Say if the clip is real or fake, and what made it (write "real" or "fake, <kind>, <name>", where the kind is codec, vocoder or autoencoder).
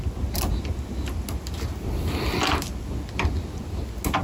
real